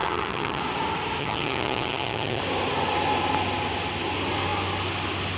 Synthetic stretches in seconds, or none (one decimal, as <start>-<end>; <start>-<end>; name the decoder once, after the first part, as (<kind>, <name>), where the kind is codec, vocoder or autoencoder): 0.0-0.6 (vocoder, HiFi-GAN); 1.2-2.4